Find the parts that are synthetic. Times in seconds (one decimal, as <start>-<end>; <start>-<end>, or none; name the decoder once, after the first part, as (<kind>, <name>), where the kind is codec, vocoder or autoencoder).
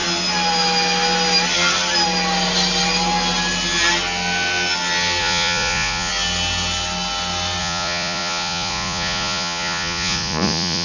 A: 5.2-6.1 (vocoder, Vocos); 7.6-10.8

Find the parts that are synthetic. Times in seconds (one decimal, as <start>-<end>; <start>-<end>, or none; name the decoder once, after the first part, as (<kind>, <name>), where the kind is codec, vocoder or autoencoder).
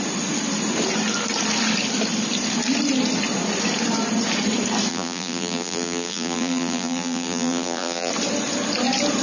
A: 4.9-8.1 (vocoder, BigVGAN v2)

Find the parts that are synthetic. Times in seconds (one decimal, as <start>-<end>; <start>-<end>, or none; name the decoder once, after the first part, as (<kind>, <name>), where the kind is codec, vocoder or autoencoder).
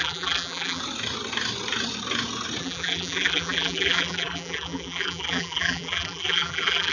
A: 0.0-0.8 (vocoder, BigVGAN v2); 2.6-6.9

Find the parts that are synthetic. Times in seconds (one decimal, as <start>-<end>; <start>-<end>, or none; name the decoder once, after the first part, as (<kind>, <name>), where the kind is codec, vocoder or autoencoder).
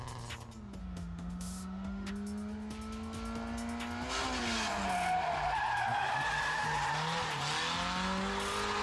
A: 0.8-2.1 (autoencoder, DAC-VAE)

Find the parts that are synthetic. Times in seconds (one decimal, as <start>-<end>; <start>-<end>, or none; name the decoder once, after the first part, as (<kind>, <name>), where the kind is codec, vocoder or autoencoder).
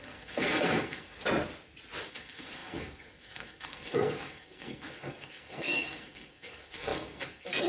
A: 0.0-1.2 (codec, SNAC); 2.1-7.7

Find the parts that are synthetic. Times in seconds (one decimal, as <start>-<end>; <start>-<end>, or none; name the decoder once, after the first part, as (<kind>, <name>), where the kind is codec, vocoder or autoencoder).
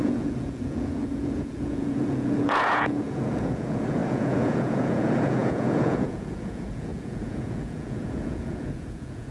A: 0.0-9.3 (vocoder, Vocos)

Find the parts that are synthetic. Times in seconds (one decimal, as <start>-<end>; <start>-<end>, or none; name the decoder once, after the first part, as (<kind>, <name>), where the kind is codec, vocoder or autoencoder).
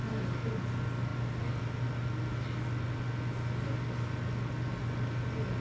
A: none